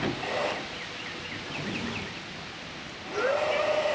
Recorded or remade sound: recorded